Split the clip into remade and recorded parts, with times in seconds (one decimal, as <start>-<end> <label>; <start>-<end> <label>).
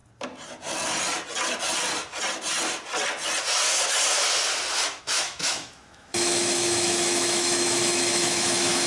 0.0-5.0 recorded; 5.0-8.9 remade